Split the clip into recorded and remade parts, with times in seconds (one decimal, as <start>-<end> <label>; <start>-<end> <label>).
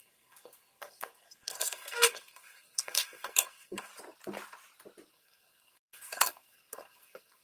0.0-3.9 remade; 3.9-5.1 recorded; 5.1-7.4 remade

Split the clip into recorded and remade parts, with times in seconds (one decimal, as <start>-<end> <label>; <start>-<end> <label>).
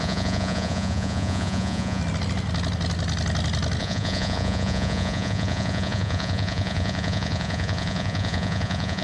0.0-2.0 remade; 2.0-3.8 recorded; 3.8-9.0 remade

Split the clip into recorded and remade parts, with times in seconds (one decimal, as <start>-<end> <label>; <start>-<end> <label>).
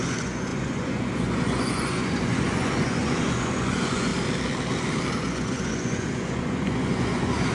0.0-4.1 remade; 4.1-5.1 recorded; 5.1-7.5 remade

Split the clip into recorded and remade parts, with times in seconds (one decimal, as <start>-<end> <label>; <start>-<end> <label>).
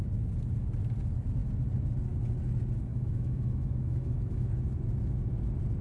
0.0-2.9 recorded; 2.9-4.5 remade; 4.5-5.8 recorded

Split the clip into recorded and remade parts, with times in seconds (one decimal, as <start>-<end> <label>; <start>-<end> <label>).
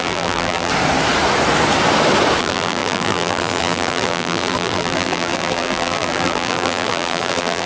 0.0-0.7 remade; 0.7-2.4 recorded; 2.4-7.7 remade